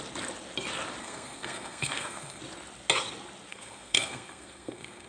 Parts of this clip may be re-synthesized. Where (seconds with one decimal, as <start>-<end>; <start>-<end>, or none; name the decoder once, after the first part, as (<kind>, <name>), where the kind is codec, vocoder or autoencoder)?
1.0-2.4 (codec, SNAC); 3.5-5.1